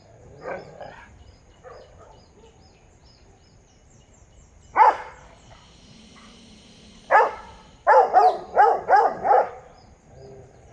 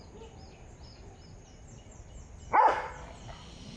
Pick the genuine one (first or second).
second